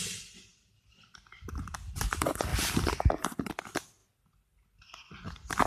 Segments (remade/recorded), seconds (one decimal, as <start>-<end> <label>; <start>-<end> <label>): 0.0-0.5 recorded; 0.5-1.9 remade; 1.9-2.5 recorded; 2.5-3.5 remade; 3.5-5.7 recorded